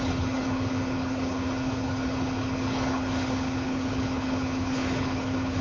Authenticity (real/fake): fake